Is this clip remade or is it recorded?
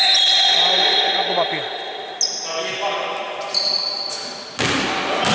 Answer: recorded